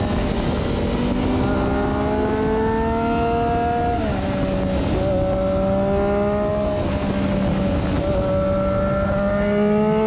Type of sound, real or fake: real